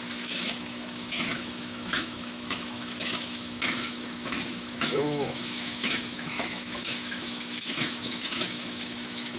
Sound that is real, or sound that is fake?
fake